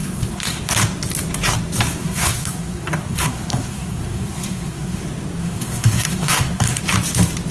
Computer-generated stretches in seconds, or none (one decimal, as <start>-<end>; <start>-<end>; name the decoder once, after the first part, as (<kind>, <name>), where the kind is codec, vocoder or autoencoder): 0.0-0.6 (codec, SNAC); 2.0-5.0; 5.4-6.8